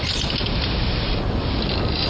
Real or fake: real